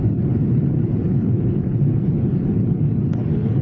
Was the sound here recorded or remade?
remade